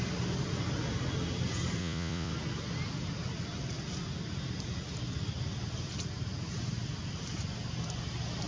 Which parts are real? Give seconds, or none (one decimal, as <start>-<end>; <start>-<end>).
0.0-1.8; 2.3-8.5